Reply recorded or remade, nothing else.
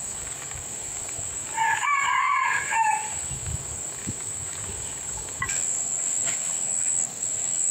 remade